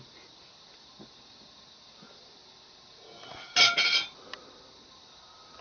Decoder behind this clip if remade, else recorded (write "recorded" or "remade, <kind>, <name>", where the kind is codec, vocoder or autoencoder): recorded